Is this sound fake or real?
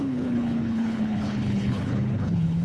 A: fake